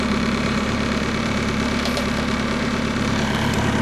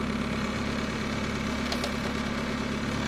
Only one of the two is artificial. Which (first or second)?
first